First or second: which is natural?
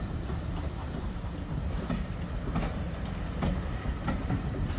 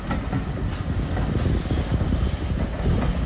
second